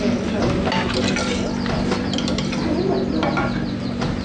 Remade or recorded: recorded